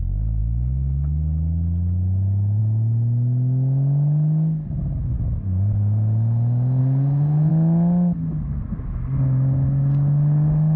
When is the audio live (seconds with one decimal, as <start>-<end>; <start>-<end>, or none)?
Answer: 0.0-6.8; 7.5-10.8